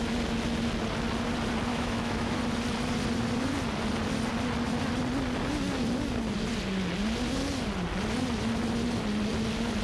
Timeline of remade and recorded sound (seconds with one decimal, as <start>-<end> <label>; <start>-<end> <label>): 0.0-1.7 recorded; 1.7-2.4 remade; 2.4-9.8 recorded